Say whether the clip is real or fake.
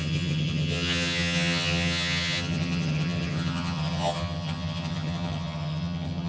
fake